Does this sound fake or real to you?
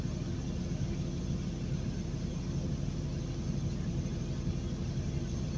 real